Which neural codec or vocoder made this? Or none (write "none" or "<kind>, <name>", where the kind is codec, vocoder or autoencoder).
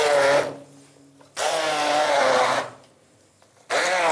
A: none